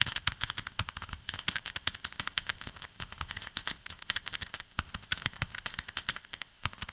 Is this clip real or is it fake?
fake